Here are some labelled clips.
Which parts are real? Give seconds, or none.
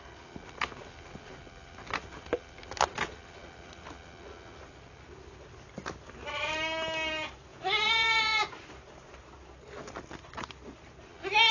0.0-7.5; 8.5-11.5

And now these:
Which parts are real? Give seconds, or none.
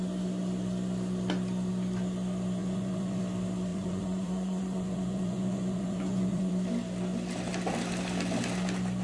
0.0-2.6; 3.2-3.7; 6.5-9.0